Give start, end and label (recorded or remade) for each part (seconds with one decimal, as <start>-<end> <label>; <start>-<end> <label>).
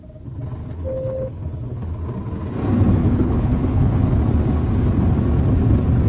0.0-0.6 recorded; 0.6-2.0 remade; 2.0-3.0 recorded; 3.0-4.2 remade; 4.2-6.1 recorded